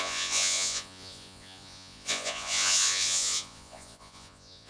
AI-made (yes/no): yes